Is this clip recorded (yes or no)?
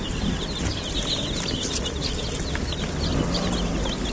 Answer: yes